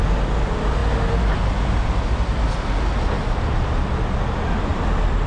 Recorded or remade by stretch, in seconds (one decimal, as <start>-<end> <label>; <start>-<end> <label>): 0.0-4.7 recorded; 4.7-5.3 remade